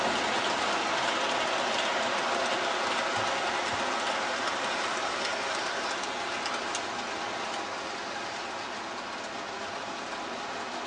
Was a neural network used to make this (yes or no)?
no